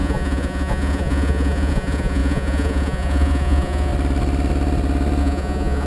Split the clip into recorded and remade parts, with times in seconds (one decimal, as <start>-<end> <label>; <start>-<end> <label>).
0.0-3.9 remade; 3.9-5.2 recorded; 5.2-5.9 remade